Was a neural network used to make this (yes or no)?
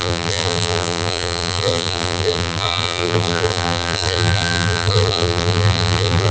yes